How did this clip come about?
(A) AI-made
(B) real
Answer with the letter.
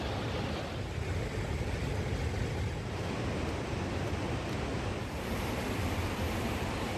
B